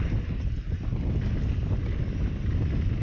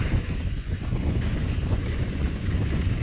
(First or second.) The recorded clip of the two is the first